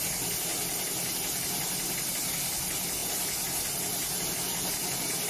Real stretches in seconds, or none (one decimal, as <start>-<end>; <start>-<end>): 0.0-5.3